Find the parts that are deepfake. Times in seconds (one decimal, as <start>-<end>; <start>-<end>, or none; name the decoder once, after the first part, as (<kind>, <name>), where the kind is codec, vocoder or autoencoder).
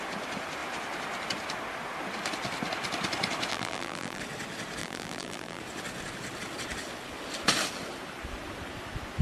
3.5-4.2 (vocoder, BigVGAN v2); 4.8-5.6